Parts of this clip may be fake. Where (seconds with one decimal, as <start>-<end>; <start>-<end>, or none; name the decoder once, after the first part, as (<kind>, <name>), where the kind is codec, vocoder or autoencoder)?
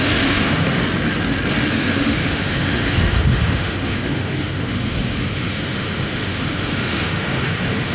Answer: 0.0-0.8 (autoencoder, DAC-VAE); 1.7-7.9